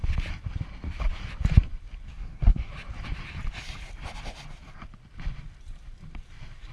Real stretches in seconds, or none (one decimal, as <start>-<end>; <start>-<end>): 0.0-2.1; 2.7-6.7

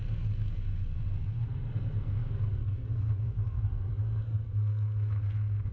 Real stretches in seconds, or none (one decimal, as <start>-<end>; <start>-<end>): none

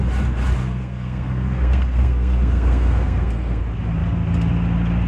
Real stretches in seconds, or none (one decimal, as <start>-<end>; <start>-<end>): 0.0-0.6; 3.6-5.1

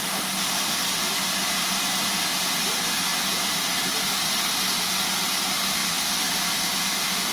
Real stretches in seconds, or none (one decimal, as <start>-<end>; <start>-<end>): 0.0-7.3

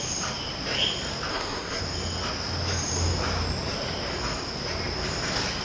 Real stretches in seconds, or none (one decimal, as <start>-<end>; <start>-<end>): 0.0-1.3; 1.8-5.6

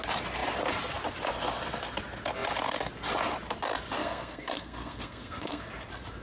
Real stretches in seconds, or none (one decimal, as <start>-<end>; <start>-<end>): 0.0-4.0; 5.7-6.2

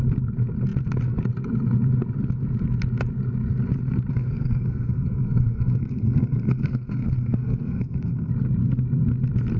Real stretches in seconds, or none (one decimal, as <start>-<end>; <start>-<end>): 0.0-4.1; 8.3-9.6